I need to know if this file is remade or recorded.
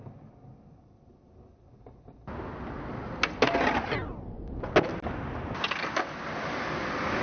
recorded